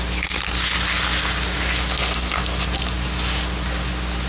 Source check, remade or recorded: recorded